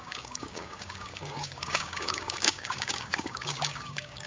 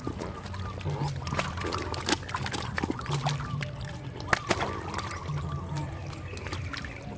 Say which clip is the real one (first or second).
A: second